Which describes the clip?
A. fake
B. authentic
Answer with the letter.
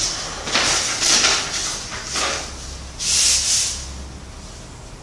B